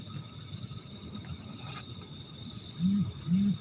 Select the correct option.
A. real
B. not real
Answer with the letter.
A